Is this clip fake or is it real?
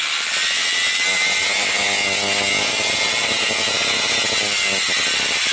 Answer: real